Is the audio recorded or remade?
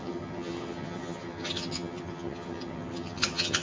remade